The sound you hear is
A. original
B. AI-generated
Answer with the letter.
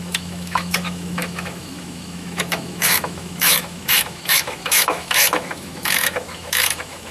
B